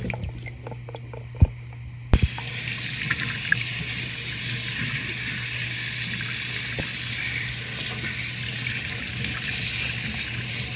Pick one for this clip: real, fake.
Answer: real